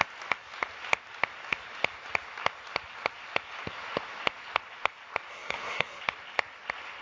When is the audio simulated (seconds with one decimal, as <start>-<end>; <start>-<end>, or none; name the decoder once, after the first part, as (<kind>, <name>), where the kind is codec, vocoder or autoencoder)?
5.3-6.0 (codec, SNAC)